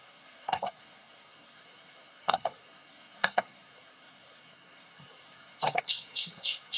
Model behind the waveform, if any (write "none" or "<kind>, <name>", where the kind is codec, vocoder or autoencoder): codec, SNAC